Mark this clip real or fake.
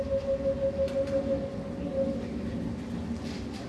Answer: real